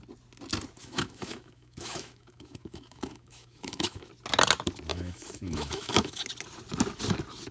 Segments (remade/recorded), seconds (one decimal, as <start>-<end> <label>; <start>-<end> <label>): 0.0-0.8 recorded; 0.8-4.1 remade; 4.1-4.9 recorded; 4.9-6.2 remade; 6.2-7.5 recorded